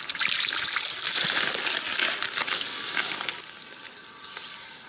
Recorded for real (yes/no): yes